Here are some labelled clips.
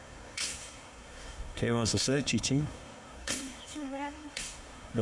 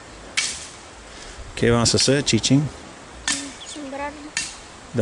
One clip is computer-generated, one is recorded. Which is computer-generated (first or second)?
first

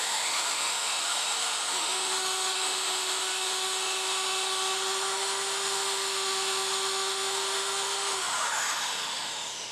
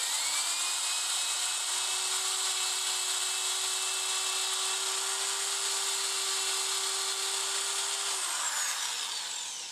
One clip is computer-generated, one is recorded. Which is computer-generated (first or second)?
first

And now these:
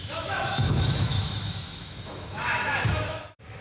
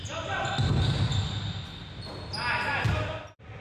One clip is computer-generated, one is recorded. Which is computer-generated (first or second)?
first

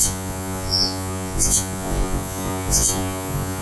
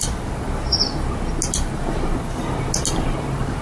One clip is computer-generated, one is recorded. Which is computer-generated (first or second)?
first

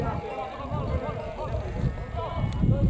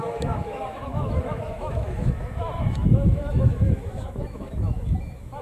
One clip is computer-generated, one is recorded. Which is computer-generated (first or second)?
second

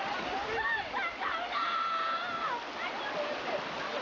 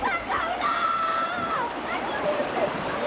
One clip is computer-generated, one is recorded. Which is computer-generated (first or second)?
second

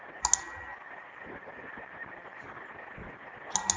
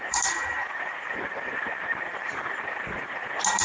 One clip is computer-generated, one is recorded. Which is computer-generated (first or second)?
second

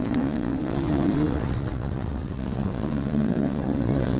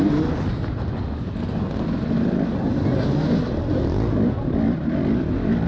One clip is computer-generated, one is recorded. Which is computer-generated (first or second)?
first